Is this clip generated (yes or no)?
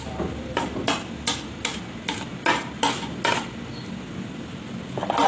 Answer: no